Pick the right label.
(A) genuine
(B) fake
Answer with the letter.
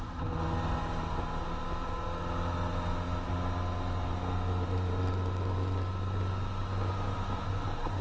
A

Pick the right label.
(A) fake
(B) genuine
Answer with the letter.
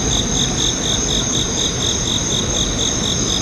B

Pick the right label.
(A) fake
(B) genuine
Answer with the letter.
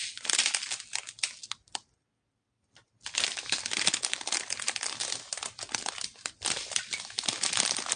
B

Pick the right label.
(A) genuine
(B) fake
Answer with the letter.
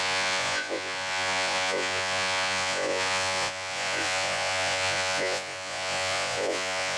B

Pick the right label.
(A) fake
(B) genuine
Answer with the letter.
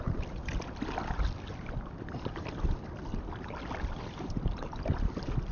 B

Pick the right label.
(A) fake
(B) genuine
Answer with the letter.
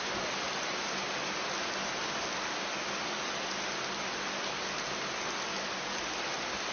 B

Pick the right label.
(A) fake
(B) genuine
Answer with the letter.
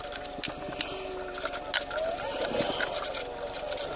B